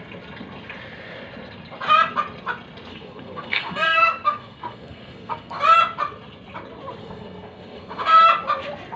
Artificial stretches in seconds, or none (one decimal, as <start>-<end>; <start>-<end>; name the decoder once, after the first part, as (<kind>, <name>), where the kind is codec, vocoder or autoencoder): 2.9-5.6 (codec, SNAC); 7.0-8.2